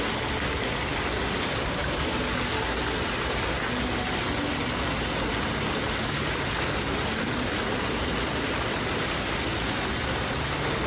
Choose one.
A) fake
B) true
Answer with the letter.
B